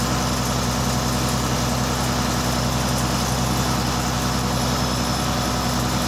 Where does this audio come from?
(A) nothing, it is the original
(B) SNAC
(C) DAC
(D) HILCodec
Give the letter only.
A